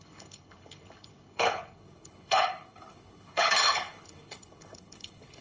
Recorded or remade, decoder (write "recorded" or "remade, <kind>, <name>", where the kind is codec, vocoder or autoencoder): remade, codec, HILCodec